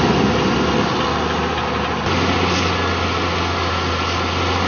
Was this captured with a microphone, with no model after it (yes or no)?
yes